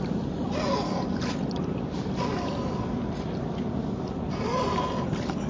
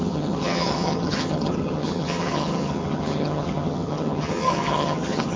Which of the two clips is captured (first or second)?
first